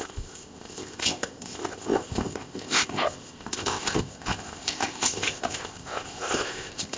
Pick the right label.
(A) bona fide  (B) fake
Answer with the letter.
B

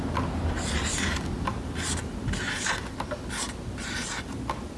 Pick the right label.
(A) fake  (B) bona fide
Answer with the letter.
B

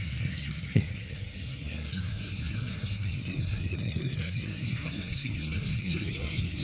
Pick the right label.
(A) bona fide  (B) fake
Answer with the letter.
B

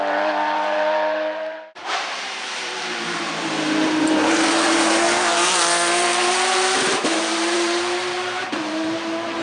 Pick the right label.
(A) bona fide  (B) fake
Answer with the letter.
B